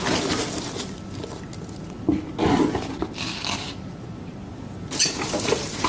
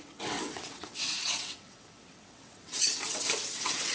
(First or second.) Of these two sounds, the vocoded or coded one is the second